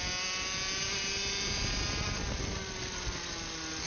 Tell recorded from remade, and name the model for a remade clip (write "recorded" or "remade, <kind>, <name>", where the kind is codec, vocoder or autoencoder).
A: recorded